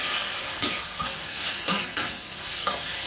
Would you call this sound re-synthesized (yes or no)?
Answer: yes